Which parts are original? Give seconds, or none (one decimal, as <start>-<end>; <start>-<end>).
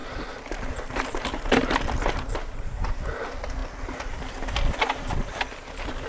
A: 3.0-6.1